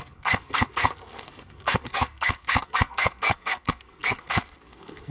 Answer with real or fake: fake